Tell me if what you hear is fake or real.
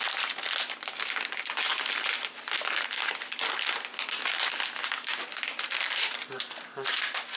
real